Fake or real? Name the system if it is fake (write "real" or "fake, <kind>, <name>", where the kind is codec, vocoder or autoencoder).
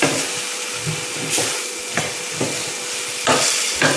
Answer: real